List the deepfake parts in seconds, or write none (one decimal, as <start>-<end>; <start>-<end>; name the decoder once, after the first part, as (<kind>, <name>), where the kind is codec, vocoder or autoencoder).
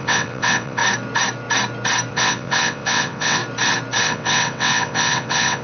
0.0-0.8 (vocoder, WaveNeXt); 2.1-3.4; 4.0-5.6